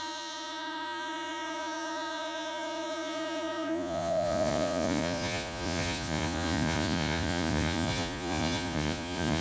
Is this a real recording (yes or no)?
no